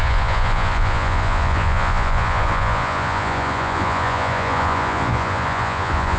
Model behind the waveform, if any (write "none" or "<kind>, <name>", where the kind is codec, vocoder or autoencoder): vocoder, Vocos